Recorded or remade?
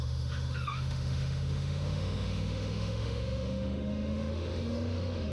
remade